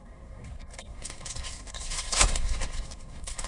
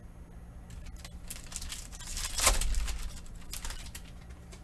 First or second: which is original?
second